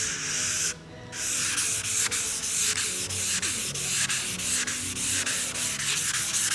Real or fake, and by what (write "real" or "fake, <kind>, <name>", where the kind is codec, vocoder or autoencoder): real